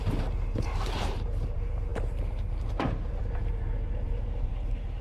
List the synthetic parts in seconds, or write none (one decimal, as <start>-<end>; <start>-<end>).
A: 0.0-5.0

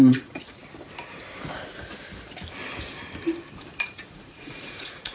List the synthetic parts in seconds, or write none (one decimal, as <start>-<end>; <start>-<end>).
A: 0.0-0.6; 3.7-5.1

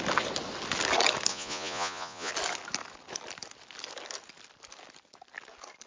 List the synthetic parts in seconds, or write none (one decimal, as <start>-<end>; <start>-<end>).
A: 1.3-2.3